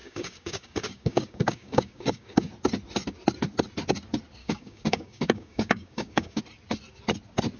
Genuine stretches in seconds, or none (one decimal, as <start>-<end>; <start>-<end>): 2.5-4.4; 6.4-7.6